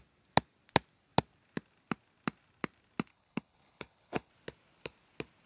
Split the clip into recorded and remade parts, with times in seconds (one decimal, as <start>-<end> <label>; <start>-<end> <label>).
0.0-3.1 recorded; 3.1-4.3 remade; 4.3-5.5 recorded